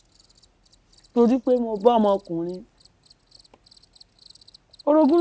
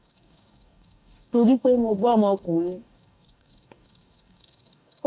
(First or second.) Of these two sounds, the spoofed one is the second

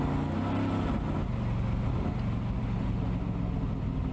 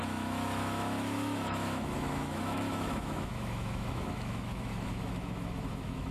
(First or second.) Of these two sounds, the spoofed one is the second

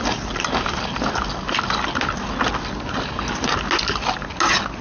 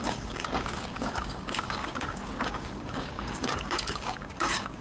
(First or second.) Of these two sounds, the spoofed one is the second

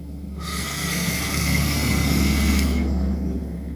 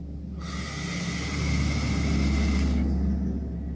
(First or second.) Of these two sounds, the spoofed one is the first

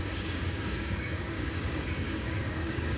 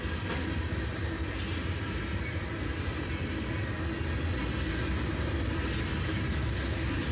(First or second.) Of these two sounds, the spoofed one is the first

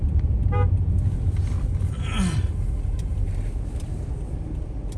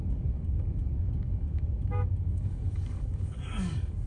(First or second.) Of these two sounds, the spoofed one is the second